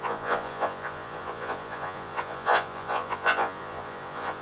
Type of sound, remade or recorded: remade